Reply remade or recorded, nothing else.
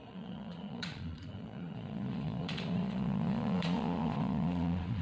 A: remade